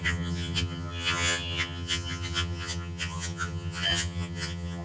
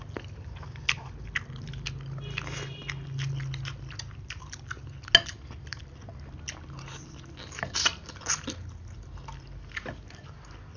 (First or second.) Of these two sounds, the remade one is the first